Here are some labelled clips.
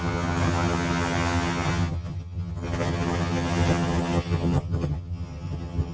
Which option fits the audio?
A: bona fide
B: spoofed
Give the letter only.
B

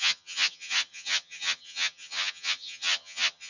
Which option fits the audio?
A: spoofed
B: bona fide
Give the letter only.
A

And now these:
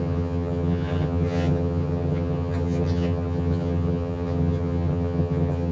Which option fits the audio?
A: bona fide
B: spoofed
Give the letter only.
B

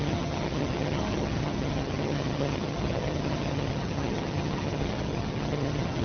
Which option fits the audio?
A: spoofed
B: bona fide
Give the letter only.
A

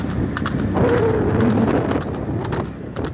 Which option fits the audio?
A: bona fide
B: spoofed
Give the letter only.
A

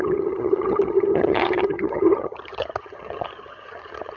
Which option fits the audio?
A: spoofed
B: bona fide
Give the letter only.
A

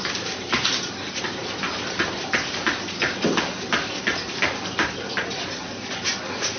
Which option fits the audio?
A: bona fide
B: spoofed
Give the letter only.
A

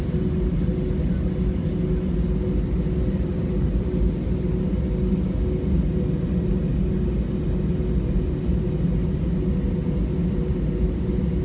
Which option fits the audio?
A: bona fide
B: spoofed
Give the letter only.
A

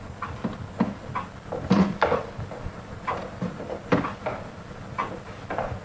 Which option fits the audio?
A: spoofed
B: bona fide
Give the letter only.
B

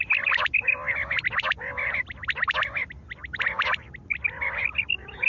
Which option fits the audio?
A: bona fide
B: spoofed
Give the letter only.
A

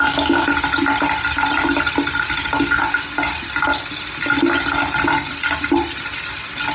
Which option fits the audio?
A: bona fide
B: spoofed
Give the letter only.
A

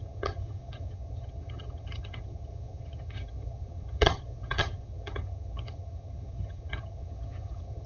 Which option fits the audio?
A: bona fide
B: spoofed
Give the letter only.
B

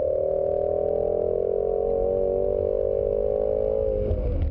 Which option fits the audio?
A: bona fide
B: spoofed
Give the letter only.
A